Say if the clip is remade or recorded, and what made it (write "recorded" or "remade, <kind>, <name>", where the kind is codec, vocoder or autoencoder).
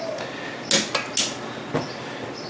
recorded